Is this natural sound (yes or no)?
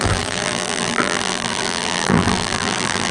no